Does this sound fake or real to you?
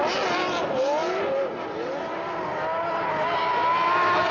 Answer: real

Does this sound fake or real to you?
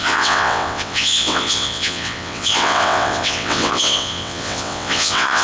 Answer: fake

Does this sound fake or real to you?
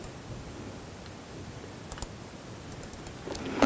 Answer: real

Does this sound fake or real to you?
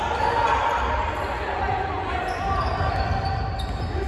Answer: real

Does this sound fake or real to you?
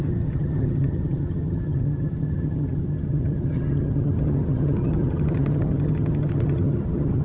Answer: fake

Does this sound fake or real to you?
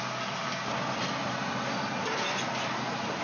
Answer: real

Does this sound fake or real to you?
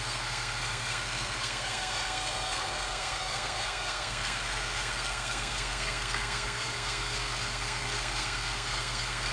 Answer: fake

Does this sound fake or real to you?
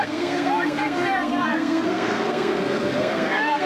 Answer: fake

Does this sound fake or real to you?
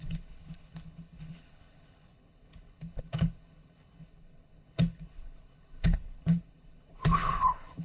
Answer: fake